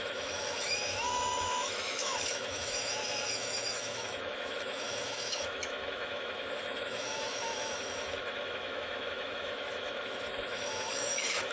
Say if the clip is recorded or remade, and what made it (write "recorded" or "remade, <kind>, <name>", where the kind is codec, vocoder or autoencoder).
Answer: remade, autoencoder, DAC-VAE